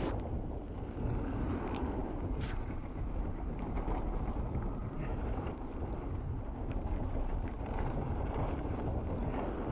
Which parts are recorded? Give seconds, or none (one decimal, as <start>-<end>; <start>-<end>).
0.0-2.0; 3.7-5.1; 9.2-9.7